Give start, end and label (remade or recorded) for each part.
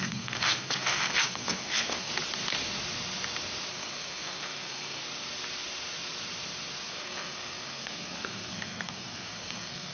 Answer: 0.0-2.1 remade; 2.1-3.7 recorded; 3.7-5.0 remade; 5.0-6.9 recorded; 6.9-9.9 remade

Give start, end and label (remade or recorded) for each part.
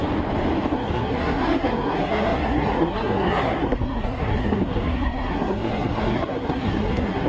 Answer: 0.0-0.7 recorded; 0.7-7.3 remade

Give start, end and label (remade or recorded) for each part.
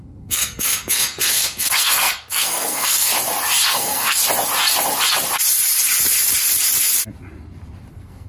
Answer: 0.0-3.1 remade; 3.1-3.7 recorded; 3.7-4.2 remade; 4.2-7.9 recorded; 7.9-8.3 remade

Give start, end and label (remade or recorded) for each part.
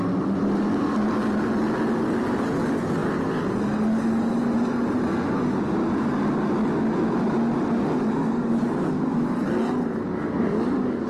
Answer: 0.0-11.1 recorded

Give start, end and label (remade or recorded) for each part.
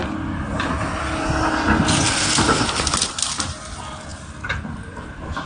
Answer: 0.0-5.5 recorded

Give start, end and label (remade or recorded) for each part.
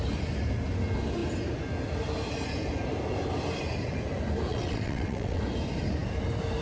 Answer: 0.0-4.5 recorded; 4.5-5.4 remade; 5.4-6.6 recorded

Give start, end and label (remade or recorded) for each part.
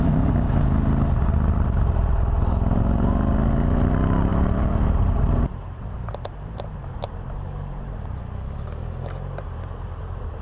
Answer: 0.0-4.3 recorded; 4.3-8.2 remade; 8.2-10.4 recorded